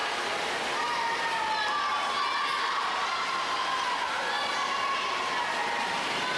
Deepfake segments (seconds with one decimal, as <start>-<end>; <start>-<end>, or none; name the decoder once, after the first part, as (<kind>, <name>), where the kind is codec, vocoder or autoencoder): none